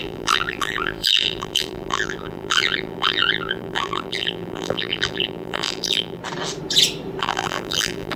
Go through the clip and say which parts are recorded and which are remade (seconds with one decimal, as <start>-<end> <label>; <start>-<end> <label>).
0.0-6.2 remade; 6.2-7.2 recorded; 7.2-8.2 remade